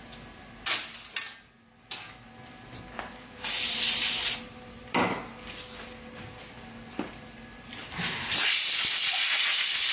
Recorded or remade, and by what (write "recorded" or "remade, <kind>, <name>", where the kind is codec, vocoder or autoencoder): recorded